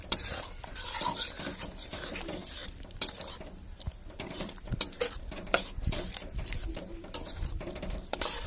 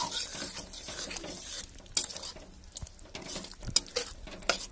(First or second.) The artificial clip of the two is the first